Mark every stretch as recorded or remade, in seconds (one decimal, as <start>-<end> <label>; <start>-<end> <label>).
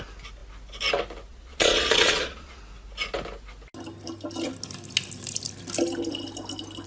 0.0-1.3 recorded; 1.3-2.6 remade; 2.6-6.9 recorded